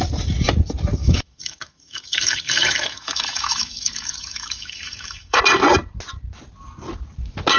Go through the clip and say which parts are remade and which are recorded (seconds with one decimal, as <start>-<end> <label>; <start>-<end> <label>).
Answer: 0.0-1.0 recorded; 1.0-5.4 remade; 5.4-7.6 recorded